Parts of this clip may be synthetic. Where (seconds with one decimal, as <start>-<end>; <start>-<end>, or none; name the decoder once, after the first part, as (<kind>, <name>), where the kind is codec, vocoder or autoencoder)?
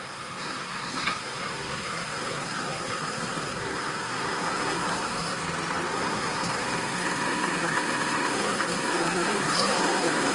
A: 0.0-5.4 (codec, SNAC); 5.9-10.3